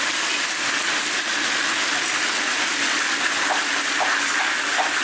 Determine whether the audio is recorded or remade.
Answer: recorded